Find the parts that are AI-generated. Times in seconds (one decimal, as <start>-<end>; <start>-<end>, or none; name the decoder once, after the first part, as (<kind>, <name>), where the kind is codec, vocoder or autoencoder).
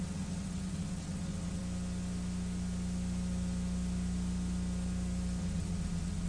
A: 0.0-1.6 (vocoder, WaveNeXt); 5.4-6.3